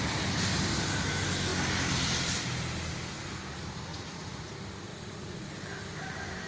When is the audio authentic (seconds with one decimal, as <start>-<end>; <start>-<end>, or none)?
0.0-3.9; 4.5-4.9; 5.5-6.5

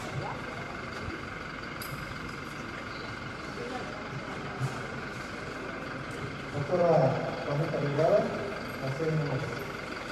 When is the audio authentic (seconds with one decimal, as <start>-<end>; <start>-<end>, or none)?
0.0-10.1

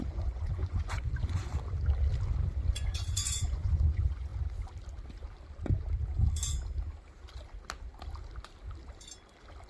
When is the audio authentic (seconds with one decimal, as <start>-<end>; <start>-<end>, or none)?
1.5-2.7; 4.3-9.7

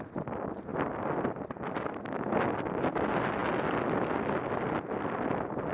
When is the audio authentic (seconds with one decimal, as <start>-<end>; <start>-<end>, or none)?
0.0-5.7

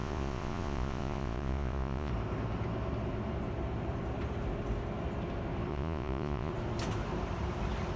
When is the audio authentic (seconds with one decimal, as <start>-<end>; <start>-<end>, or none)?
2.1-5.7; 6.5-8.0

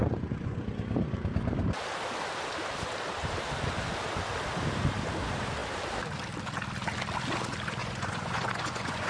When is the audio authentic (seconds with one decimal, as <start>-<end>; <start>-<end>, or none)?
0.6-7.8

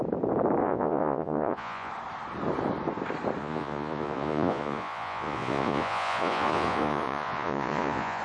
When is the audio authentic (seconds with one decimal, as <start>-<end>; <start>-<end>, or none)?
0.0-0.6; 1.9-3.4